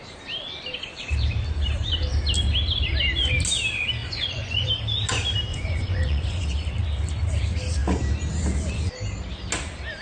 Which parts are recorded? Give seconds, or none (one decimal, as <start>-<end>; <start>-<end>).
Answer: 0.0-4.0; 4.7-5.5; 6.4-10.0